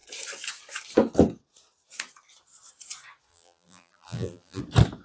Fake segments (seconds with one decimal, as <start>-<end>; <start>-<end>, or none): 3.3-4.6